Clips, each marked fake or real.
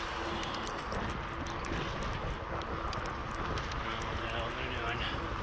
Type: real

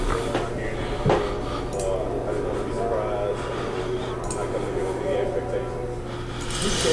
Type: real